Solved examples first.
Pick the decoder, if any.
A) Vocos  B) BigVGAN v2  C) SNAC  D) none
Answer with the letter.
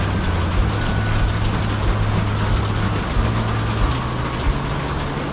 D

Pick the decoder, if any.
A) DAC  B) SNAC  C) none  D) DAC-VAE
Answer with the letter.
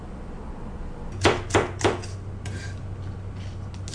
C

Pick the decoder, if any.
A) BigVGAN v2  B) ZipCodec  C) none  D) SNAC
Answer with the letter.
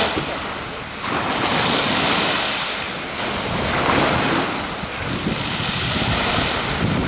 C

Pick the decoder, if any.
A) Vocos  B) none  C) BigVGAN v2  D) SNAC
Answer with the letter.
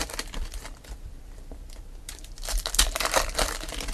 C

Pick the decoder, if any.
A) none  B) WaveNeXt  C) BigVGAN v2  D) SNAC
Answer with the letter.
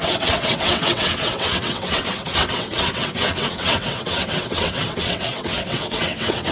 B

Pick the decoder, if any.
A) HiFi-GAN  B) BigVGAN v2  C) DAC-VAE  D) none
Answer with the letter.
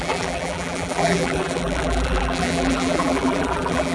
B